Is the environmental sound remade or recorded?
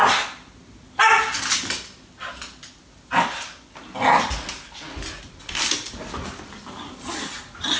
recorded